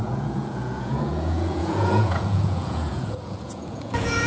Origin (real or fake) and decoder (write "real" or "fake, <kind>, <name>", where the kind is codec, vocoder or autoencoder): fake, vocoder, Vocos